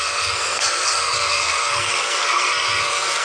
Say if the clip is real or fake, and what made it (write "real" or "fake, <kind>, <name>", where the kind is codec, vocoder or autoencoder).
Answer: fake, codec, SNAC